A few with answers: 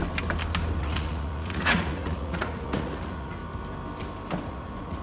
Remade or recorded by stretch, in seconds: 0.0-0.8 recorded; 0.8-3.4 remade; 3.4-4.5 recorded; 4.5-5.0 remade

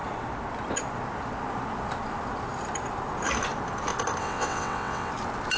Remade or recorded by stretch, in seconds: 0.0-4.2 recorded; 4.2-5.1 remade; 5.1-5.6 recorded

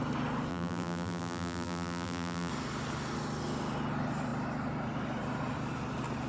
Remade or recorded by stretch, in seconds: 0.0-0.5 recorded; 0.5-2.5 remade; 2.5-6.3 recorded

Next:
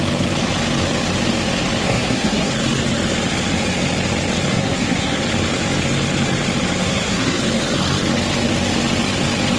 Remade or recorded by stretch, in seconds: 0.0-1.8 recorded; 1.8-2.5 remade; 2.5-4.5 recorded; 4.5-5.2 remade; 5.2-6.8 recorded; 6.8-7.4 remade; 7.4-9.6 recorded